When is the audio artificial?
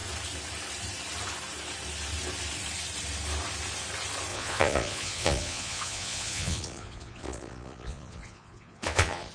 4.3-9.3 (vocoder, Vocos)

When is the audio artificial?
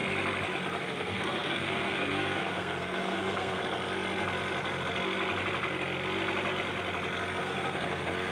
0.8-3.6 (codec, SNAC); 7.4-8.3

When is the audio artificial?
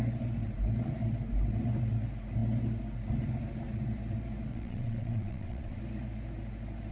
4.5-5.8 (vocoder, WaveNeXt)